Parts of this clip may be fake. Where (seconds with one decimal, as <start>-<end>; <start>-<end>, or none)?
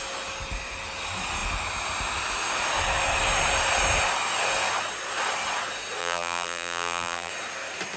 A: 6.0-7.3